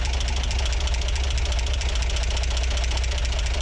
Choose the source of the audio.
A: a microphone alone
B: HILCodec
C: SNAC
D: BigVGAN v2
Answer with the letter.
A